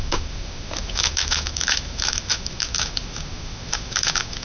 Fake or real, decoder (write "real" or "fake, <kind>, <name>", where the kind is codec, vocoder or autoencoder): fake, autoencoder, DAC-VAE